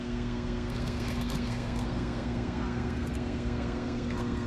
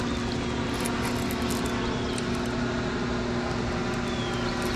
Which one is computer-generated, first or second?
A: first